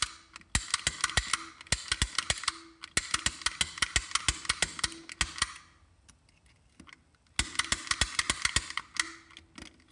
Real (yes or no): yes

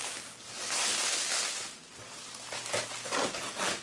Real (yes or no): yes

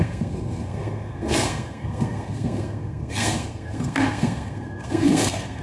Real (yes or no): no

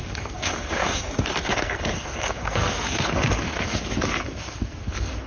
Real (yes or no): no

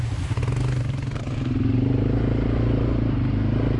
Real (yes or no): yes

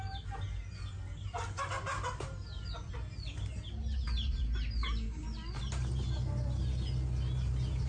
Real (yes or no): yes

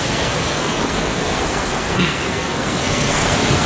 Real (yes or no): no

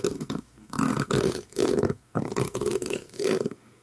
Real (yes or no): no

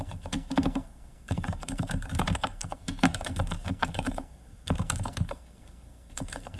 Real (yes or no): no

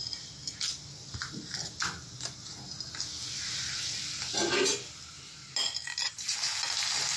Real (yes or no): yes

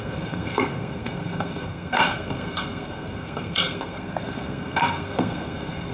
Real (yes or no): no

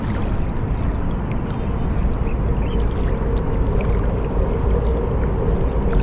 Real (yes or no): yes